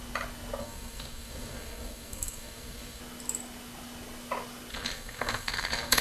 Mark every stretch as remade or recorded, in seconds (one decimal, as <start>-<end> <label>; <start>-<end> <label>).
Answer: 0.0-0.6 recorded; 0.6-3.0 remade; 3.0-4.7 recorded; 4.7-6.0 remade

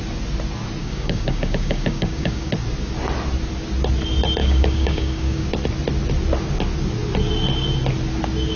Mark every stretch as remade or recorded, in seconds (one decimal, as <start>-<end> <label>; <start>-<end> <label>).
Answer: 0.0-0.8 recorded; 0.8-2.5 remade; 2.5-4.4 recorded; 4.4-5.5 remade; 5.5-8.6 recorded

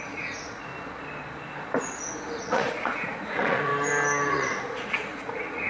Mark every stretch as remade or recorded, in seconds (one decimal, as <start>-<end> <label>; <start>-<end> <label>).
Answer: 0.0-0.7 remade; 0.7-2.4 recorded; 2.4-3.7 remade; 3.7-4.3 recorded; 4.3-5.7 remade

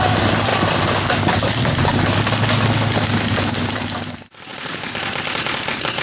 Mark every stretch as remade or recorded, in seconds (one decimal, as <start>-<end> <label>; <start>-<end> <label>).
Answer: 0.0-0.5 remade; 0.5-3.5 recorded; 3.5-6.0 remade